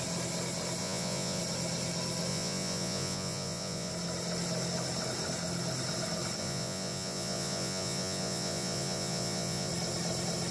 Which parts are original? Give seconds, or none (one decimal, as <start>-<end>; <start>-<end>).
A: 0.0-0.8; 1.4-2.3; 3.9-6.4; 9.7-10.5

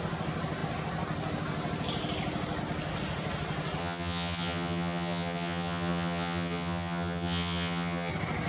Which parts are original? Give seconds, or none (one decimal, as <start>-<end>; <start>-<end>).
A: 0.0-3.8; 8.1-8.5

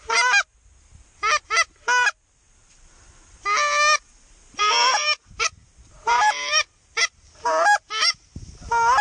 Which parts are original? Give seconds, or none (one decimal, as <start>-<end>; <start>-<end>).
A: 0.0-4.6

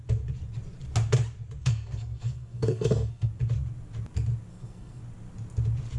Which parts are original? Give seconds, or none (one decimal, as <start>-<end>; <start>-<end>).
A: 0.0-1.6; 3.3-4.5; 5.0-6.0

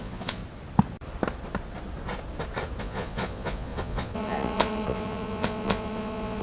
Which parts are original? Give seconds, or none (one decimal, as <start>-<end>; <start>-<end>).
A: 0.4-2.8